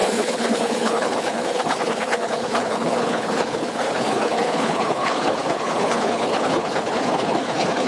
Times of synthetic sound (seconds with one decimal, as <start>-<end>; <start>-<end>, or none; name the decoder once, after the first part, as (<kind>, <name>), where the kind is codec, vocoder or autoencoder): 0.0-7.9 (codec, HILCodec)